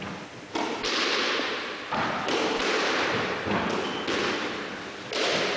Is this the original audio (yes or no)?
yes